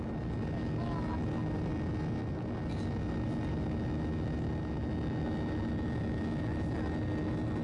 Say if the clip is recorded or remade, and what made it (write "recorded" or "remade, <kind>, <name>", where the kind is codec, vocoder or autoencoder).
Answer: recorded